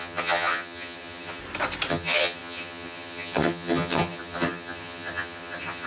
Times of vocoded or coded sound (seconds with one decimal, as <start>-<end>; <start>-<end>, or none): 0.0-1.4; 1.9-5.9